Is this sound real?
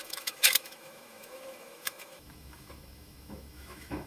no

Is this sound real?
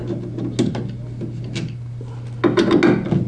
yes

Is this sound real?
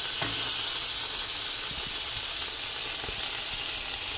yes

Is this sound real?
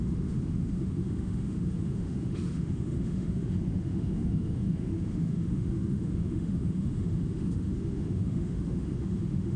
no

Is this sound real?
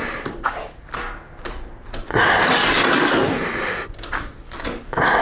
yes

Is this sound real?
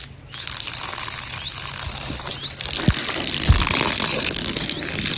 yes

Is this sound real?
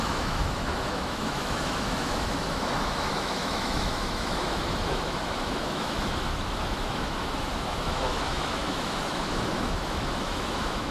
no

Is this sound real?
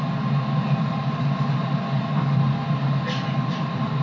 yes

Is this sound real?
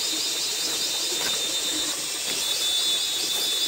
yes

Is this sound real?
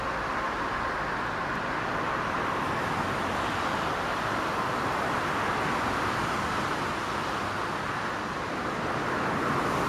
yes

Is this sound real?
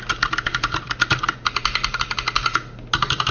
yes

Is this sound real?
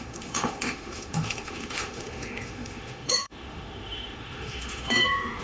no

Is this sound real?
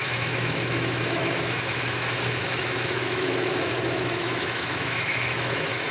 no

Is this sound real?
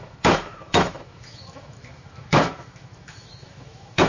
no